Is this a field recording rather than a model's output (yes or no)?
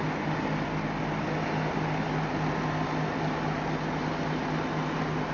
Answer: yes